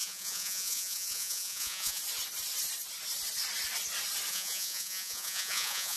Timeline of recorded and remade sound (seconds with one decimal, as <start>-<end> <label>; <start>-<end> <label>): 0.0-2.0 remade; 2.0-4.3 recorded; 4.3-6.0 remade